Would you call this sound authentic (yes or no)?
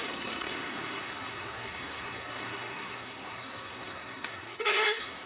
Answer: no